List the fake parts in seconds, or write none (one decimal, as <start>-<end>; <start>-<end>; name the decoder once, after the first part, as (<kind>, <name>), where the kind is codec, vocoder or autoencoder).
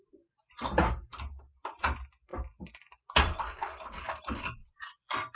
4.6-5.4 (vocoder, BigVGAN v2)